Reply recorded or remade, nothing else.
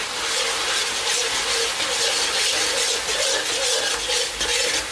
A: recorded